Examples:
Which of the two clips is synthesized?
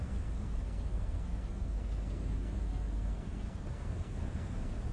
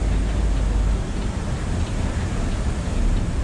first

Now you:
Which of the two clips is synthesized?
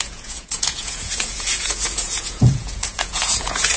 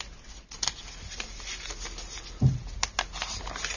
first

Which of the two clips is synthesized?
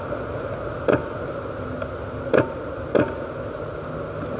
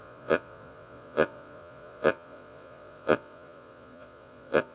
second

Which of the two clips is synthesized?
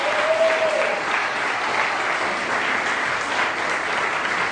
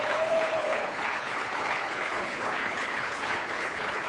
second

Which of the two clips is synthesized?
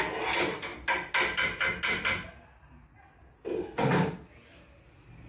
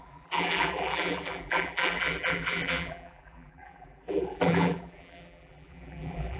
second